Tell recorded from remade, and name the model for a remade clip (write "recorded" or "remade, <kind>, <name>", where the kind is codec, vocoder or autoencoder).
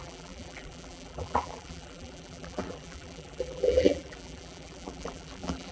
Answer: remade, vocoder, BigVGAN v2